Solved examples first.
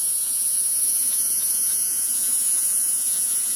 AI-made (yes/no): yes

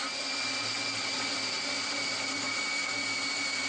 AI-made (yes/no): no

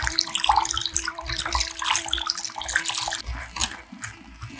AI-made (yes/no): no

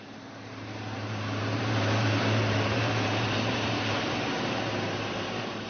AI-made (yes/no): yes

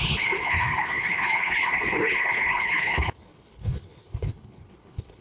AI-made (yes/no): yes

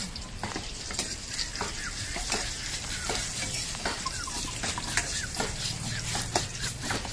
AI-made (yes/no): no